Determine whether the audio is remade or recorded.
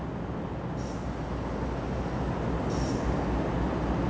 recorded